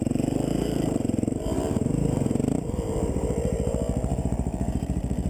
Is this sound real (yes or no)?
no